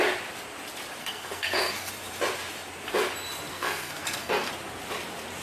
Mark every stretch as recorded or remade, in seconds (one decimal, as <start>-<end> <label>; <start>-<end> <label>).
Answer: 0.0-1.0 recorded; 1.0-1.9 remade; 1.9-3.5 recorded; 3.5-4.5 remade; 4.5-5.4 recorded